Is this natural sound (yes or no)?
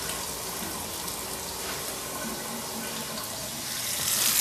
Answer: yes